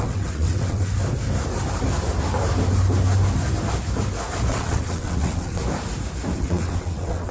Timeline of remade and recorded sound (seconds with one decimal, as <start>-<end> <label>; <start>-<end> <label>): 0.0-0.9 remade; 0.9-4.5 recorded; 4.5-5.6 remade; 5.6-6.4 recorded; 6.4-7.3 remade